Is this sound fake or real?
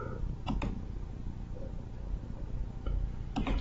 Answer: real